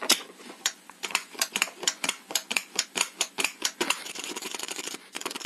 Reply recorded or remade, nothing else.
remade